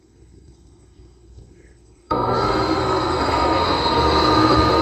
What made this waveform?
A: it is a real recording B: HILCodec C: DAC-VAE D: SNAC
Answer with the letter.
D